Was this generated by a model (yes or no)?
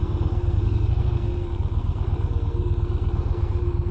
yes